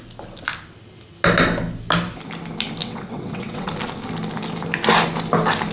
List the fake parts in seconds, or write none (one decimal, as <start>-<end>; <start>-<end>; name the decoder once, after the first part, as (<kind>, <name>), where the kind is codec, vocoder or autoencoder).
2.8-3.7 (vocoder, WaveNeXt)